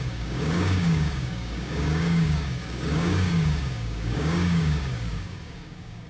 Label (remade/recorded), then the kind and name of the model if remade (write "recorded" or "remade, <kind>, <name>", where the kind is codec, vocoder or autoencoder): remade, codec, DAC